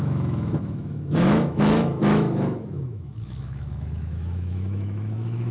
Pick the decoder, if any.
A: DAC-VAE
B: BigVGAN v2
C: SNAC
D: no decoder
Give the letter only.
A